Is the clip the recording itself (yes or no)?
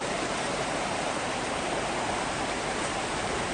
no